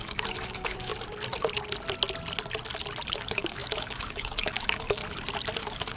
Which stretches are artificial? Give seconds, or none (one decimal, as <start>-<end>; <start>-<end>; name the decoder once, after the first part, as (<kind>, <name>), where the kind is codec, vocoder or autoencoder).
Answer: 0.0-0.9 (codec, DAC); 3.1-5.0; 5.6-6.0